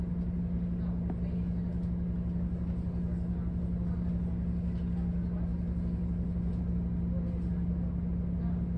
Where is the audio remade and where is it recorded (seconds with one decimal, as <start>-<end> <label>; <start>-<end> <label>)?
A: 0.0-8.8 recorded